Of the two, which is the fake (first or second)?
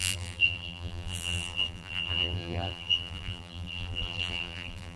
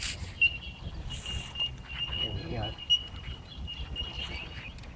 first